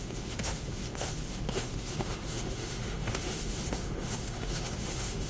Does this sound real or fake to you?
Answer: fake